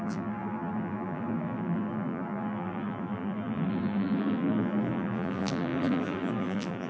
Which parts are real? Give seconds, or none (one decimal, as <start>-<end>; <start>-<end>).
none